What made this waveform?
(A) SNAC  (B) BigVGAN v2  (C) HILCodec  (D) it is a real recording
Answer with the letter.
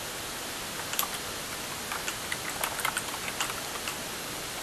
D